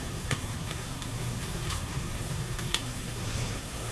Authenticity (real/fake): fake